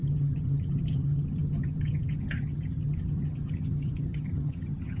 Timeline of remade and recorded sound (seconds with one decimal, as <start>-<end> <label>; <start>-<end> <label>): 0.0-5.0 remade